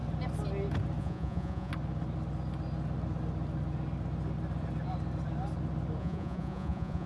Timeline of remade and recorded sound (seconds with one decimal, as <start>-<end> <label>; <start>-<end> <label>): 0.0-1.0 recorded; 1.0-1.7 remade; 1.7-6.0 recorded; 6.0-7.1 remade

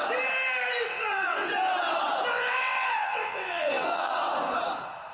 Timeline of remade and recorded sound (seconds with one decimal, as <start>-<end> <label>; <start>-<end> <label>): 0.0-0.9 recorded; 0.9-1.5 remade; 1.5-2.3 recorded; 2.3-4.2 remade; 4.2-5.1 recorded

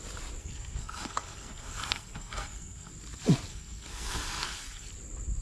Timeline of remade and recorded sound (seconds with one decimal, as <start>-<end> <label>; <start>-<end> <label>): 0.0-0.4 recorded; 0.4-2.9 remade; 2.9-3.5 recorded; 3.5-4.9 remade; 4.9-5.4 recorded

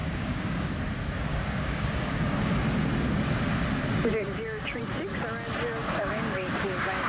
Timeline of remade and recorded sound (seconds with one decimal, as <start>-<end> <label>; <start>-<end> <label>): 0.0-0.7 remade; 0.7-1.3 recorded; 1.3-2.4 remade; 2.4-4.1 recorded; 4.1-4.8 remade; 4.8-5.8 recorded; 5.8-7.1 remade

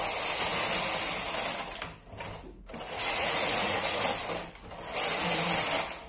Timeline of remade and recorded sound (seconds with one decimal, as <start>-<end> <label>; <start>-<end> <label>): 0.0-2.8 recorded; 2.8-4.0 remade; 4.0-6.1 recorded

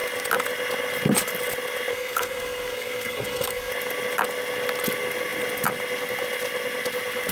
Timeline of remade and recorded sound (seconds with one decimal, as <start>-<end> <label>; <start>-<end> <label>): 0.0-1.9 recorded; 1.9-3.7 remade; 3.7-7.3 recorded

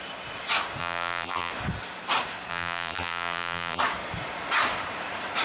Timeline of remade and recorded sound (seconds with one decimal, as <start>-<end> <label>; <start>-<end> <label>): 0.0-0.8 recorded; 0.8-1.5 remade; 1.5-2.5 recorded; 2.5-3.8 remade; 3.8-5.4 recorded